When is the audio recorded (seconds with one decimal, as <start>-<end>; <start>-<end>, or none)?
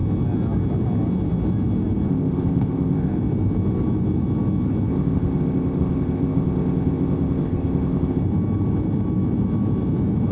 0.0-2.1; 3.1-4.9; 8.2-10.3